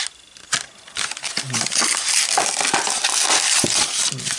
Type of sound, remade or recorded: recorded